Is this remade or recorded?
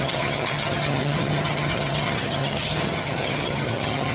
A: remade